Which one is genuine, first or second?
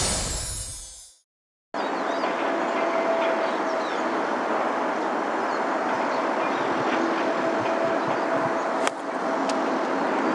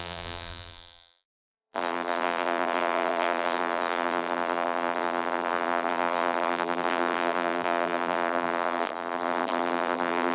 first